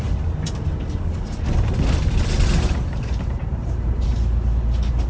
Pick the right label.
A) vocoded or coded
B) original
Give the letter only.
B